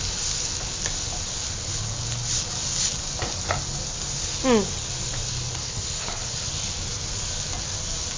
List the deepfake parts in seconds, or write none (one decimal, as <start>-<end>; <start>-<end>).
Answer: 5.6-6.5